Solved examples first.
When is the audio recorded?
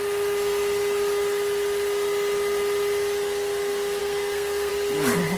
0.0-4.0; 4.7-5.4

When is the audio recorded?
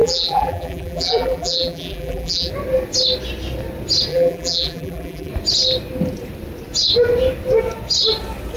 2.5-4.1; 5.3-8.6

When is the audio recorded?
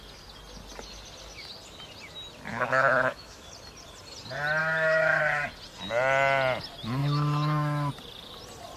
0.0-2.5; 3.5-4.6; 5.2-7.0; 7.9-8.8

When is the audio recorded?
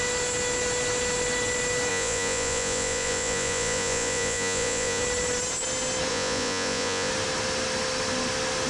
0.0-1.9; 5.0-6.1; 7.1-8.7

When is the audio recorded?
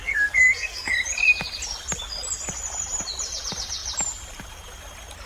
0.9-5.3